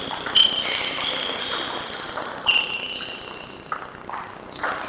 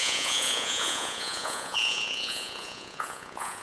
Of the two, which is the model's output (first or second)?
second